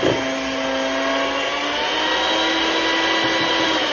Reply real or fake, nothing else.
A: real